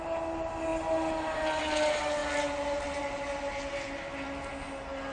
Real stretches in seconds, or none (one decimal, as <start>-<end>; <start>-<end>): 0.0-5.1